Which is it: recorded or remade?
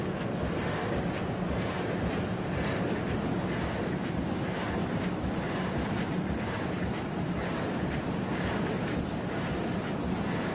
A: recorded